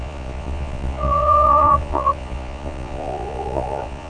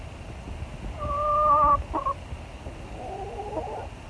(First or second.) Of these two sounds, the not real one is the first